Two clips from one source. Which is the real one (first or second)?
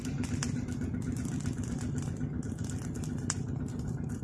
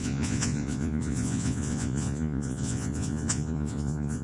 first